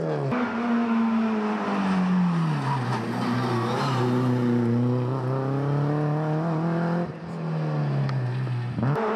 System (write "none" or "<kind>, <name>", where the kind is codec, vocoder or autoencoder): none